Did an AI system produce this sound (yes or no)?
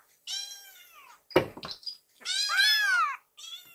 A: no